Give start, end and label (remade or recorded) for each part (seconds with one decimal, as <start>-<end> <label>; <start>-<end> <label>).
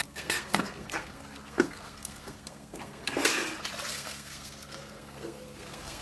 0.0-3.3 remade; 3.3-3.9 recorded; 3.9-6.0 remade